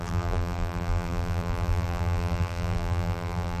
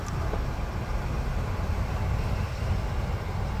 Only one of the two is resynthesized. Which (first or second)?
first